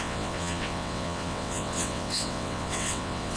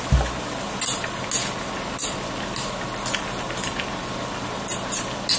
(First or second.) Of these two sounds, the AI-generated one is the first